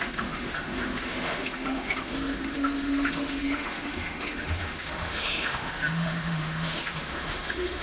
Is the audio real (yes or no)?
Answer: no